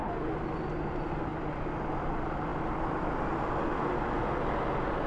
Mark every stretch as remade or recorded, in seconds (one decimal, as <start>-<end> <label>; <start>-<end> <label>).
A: 0.0-5.1 recorded